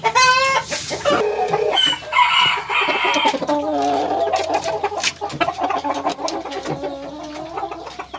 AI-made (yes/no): no